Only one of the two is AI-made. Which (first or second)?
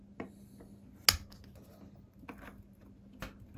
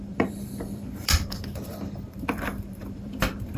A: second